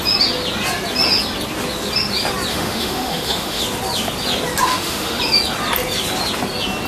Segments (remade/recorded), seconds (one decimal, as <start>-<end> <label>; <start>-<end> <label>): 0.0-2.5 recorded; 2.5-3.6 remade; 3.6-4.7 recorded; 4.7-5.2 remade; 5.2-6.9 recorded